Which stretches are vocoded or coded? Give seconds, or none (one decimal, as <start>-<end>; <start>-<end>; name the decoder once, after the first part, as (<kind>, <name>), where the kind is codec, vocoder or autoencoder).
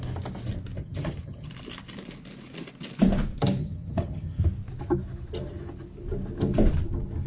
0.8-1.5 (vocoder, HiFi-GAN); 3.6-4.4